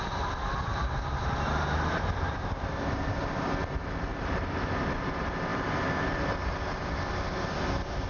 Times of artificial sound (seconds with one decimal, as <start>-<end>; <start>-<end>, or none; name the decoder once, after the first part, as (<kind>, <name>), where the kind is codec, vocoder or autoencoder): 0.8-3.2 (vocoder, BigVGAN v2); 4.1-5.1; 5.5-6.9